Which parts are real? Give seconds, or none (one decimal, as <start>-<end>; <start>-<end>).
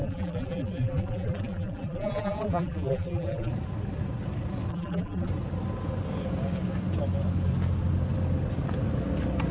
3.5-4.7; 5.3-9.5